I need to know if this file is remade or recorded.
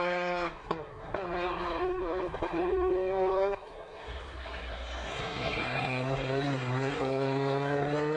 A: remade